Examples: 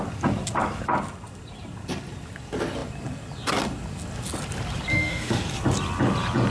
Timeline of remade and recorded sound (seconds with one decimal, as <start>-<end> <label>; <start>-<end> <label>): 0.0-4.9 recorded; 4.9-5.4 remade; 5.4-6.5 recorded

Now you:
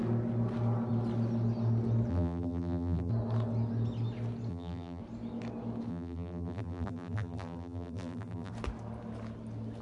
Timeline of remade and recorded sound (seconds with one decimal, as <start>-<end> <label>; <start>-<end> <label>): 0.0-2.1 recorded; 2.1-3.1 remade; 3.1-4.5 recorded; 4.5-5.0 remade; 5.0-5.9 recorded; 5.9-8.5 remade; 8.5-9.8 recorded

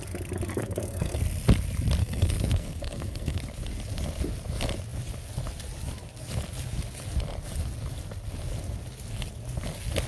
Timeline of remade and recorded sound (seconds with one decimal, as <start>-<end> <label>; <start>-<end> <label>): 0.0-0.5 recorded; 0.5-1.2 remade; 1.2-2.0 recorded; 2.0-3.4 remade; 3.4-10.1 recorded

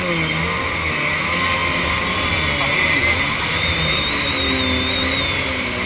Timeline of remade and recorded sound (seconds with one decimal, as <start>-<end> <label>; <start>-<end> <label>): 0.0-5.9 recorded